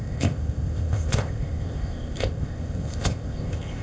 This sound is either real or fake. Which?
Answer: fake